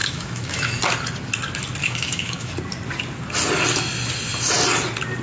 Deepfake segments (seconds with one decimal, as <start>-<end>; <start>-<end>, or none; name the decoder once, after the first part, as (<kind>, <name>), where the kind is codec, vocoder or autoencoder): 0.0-0.8 (autoencoder, DAC-VAE); 1.8-2.5